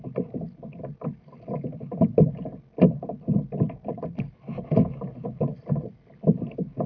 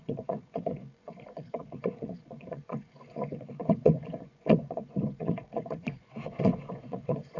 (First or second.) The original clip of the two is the first